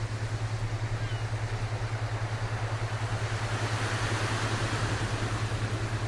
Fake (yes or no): no